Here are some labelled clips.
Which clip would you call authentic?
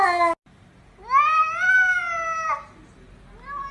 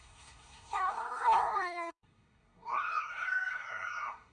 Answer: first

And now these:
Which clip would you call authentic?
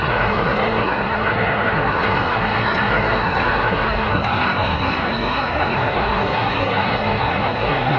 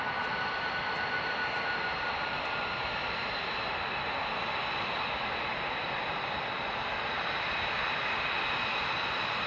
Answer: second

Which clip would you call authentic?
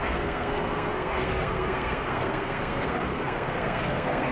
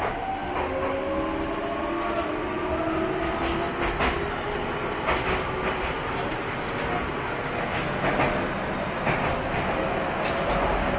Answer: second